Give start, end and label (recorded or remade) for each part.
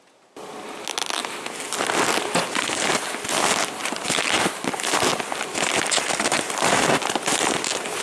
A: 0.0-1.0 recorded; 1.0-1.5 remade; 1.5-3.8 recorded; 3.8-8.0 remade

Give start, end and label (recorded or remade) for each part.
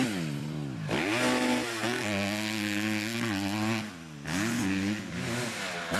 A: 0.0-1.1 remade; 1.1-4.6 recorded; 4.6-6.0 remade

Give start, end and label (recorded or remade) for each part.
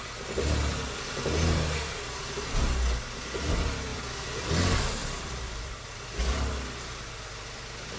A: 0.0-3.9 recorded; 3.9-4.5 remade; 4.5-5.0 recorded; 5.0-5.9 remade; 5.9-8.0 recorded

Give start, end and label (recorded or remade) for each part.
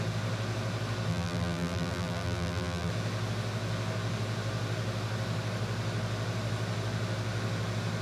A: 0.0-1.1 recorded; 1.1-2.9 remade; 2.9-8.0 recorded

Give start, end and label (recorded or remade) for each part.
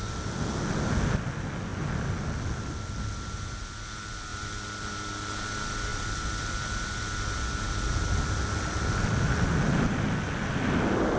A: 0.0-4.3 recorded; 4.3-4.9 remade; 4.9-5.9 recorded; 5.9-8.9 remade; 8.9-11.2 recorded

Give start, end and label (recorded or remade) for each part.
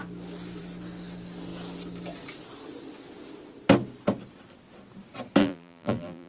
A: 0.0-5.4 recorded; 5.4-6.3 remade